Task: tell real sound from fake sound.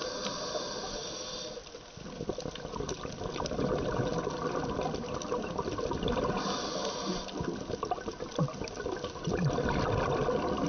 real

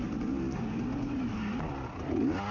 real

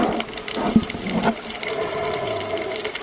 real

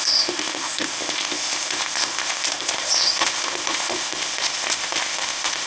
fake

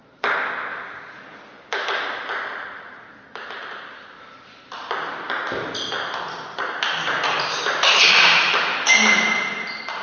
real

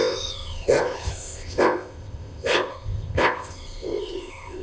fake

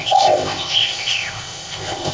fake